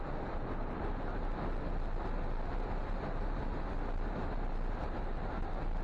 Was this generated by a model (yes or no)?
no